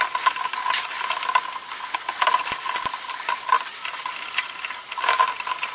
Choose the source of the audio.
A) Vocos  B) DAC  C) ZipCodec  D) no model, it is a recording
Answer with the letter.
D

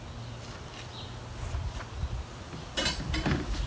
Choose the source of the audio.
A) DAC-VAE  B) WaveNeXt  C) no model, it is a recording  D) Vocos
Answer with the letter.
C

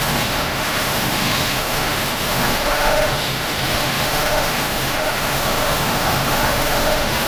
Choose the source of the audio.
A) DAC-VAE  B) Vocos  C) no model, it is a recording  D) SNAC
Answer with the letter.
A